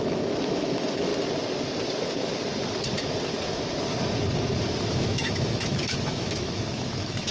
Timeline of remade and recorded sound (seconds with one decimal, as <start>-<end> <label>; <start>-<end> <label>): 0.0-1.1 remade; 1.1-4.9 recorded; 4.9-7.3 remade

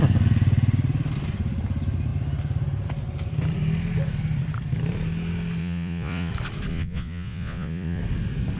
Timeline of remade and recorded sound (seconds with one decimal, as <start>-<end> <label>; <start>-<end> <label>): 0.0-5.6 recorded; 5.6-6.3 remade; 6.3-6.7 recorded; 6.7-8.0 remade; 8.0-8.6 recorded

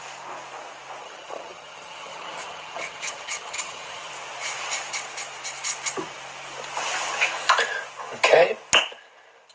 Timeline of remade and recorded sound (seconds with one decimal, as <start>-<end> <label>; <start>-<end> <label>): 0.0-1.0 recorded; 1.0-4.1 remade; 4.1-9.5 recorded

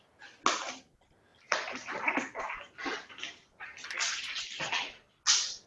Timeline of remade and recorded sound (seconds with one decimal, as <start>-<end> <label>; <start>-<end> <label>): 0.0-5.7 recorded